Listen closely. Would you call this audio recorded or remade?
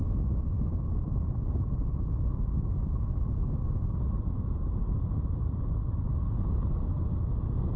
recorded